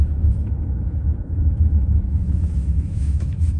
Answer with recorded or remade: remade